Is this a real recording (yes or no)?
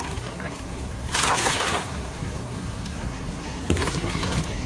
no